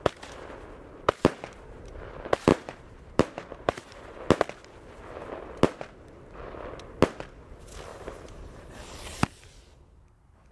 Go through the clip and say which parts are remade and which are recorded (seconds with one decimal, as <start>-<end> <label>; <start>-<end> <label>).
0.0-2.5 recorded; 2.5-4.2 remade; 4.2-7.9 recorded; 7.9-8.6 remade; 8.6-10.5 recorded